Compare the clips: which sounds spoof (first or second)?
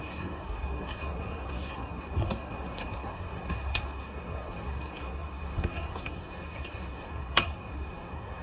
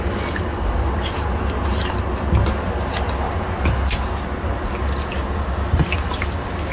first